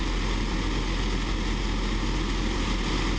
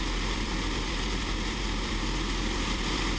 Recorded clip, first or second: first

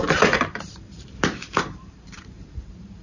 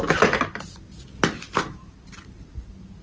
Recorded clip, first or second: second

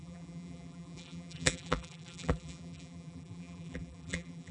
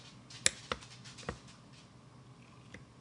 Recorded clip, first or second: second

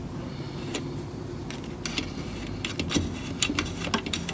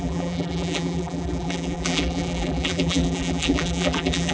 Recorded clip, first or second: first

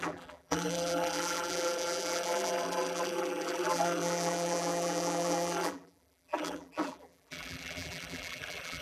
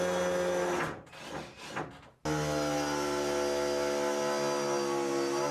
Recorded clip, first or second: second